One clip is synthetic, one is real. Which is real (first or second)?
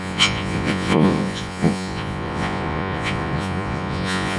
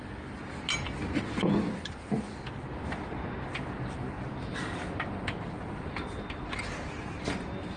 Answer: second